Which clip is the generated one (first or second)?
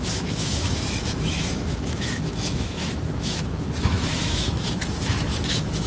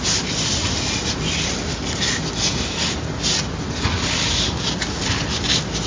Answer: first